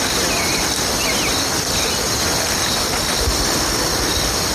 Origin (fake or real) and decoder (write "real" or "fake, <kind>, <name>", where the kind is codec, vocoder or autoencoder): real